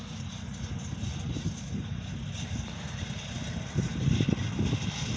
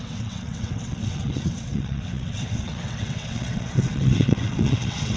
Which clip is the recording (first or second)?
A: first